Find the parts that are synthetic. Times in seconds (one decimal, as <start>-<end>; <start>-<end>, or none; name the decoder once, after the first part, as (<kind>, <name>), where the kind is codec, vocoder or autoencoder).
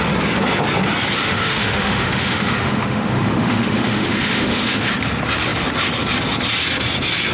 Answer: 1.2-4.9 (autoencoder, DAC-VAE)